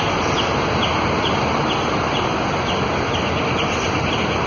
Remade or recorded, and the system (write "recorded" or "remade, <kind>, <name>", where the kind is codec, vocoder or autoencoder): recorded